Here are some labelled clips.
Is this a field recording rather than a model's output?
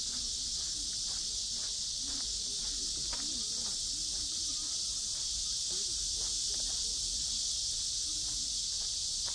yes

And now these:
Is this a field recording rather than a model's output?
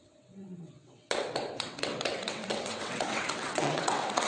no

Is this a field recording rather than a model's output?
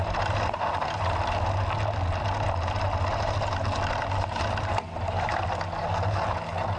yes